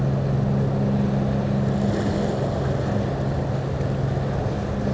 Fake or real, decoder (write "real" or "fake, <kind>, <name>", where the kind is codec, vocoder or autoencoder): real